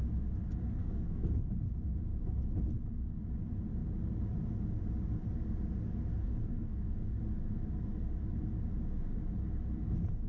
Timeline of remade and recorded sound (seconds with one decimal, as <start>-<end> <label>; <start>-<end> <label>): 0.0-0.8 recorded; 0.8-1.4 remade; 1.4-6.2 recorded; 6.2-7.2 remade; 7.2-10.3 recorded

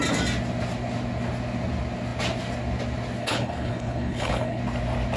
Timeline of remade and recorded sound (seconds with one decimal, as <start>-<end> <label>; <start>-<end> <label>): 0.0-3.2 recorded; 3.2-4.6 remade; 4.6-5.2 recorded